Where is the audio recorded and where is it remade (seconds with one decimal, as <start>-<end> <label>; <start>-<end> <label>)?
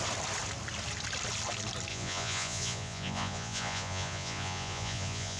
0.0-1.9 recorded; 1.9-5.4 remade